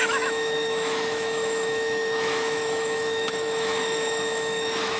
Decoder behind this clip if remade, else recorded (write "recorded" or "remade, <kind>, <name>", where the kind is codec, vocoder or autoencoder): remade, autoencoder, DAC-VAE